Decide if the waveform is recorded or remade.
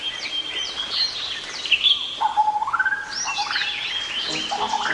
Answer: recorded